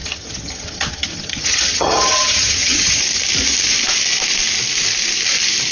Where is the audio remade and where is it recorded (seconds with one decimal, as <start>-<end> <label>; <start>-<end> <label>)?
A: 0.0-3.0 remade; 3.0-5.7 recorded